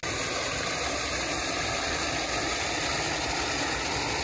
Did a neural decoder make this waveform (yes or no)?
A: no